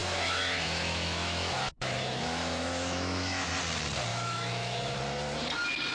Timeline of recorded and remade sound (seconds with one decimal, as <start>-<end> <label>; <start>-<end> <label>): 0.0-3.5 remade; 3.5-4.1 recorded; 4.1-5.0 remade; 5.0-5.9 recorded